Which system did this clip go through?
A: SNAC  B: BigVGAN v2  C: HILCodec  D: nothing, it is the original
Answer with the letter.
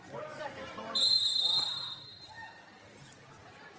D